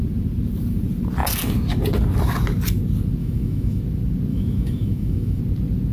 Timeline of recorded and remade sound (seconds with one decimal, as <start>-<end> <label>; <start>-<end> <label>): 0.0-3.2 recorded; 3.2-3.8 remade; 3.8-4.3 recorded; 4.3-5.4 remade; 5.4-5.9 recorded